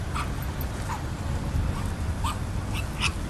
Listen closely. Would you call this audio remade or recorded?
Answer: recorded